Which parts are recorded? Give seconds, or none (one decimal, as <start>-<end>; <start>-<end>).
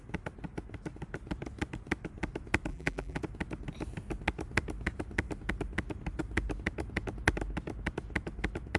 0.0-2.7; 3.2-8.8